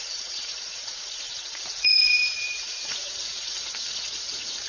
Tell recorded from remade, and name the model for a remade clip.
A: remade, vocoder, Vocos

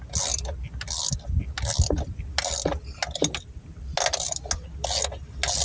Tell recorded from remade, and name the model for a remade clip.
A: recorded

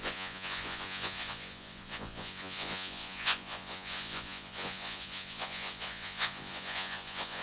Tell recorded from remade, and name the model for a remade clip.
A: remade, vocoder, Vocos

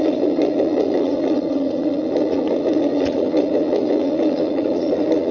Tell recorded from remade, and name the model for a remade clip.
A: remade, vocoder, Vocos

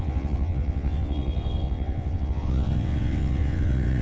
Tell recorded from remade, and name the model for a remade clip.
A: remade, vocoder, WaveNeXt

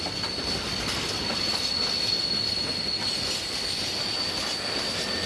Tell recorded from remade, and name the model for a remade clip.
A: recorded